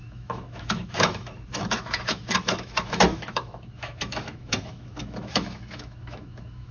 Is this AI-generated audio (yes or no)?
yes